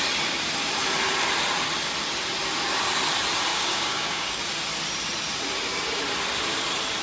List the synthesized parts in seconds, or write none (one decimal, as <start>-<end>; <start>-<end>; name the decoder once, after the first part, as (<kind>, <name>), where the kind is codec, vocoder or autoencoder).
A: 3.5-4.4 (codec, DAC)